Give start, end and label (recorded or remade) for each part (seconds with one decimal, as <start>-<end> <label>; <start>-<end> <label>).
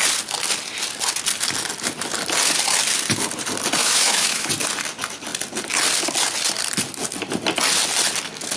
0.0-3.8 recorded; 3.8-4.5 remade; 4.5-8.6 recorded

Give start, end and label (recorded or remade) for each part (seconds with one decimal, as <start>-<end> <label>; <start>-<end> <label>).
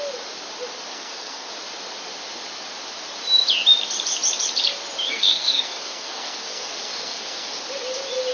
0.0-0.9 recorded; 0.9-1.5 remade; 1.5-5.1 recorded; 5.1-7.6 remade; 7.6-8.3 recorded